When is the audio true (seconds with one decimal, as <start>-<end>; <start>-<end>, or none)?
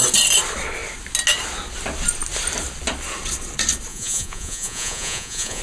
0.0-3.9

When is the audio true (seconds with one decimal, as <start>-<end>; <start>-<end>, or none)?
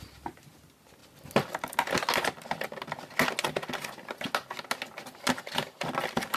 0.0-6.4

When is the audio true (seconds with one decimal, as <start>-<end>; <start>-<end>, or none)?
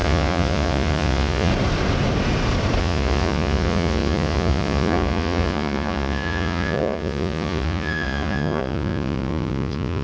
1.5-2.8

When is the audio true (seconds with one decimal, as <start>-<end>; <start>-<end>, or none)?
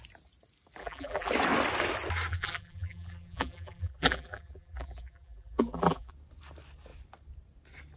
0.0-0.8; 1.3-2.3; 6.1-8.0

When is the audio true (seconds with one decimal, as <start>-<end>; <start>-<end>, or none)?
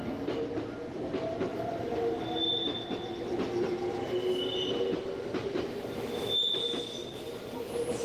0.0-7.0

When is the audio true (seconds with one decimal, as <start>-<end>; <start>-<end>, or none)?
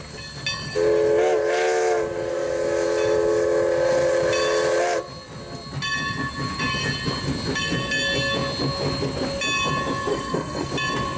0.0-10.1; 10.7-11.2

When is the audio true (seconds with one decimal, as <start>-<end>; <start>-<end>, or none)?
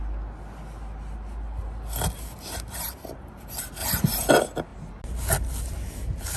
0.0-6.4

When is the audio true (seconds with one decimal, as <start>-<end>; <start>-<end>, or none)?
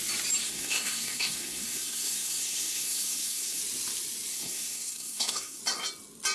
0.0-0.4; 3.6-4.3; 5.6-6.3